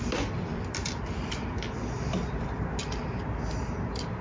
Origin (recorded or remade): recorded